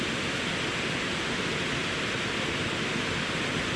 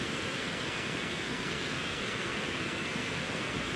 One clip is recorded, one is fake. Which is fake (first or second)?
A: second